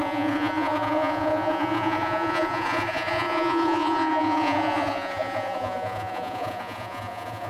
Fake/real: fake